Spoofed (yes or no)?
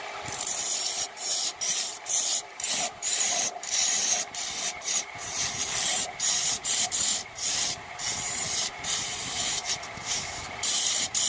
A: yes